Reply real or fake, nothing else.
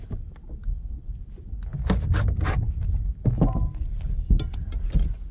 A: real